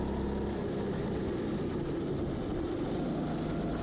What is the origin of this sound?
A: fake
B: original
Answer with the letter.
B